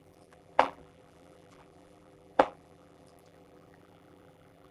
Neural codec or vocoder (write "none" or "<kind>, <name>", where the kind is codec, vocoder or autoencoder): vocoder, BigVGAN v2